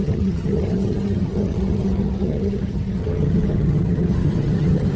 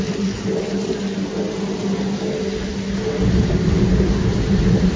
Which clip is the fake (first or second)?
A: first